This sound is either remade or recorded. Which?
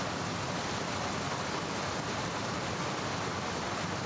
recorded